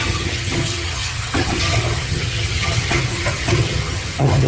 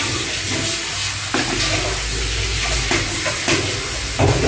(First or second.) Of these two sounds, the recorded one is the second